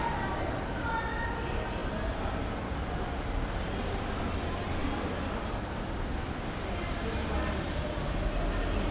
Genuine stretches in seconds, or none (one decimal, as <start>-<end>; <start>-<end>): 0.0-8.9